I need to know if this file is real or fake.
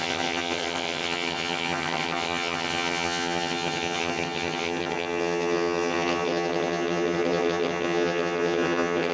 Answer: fake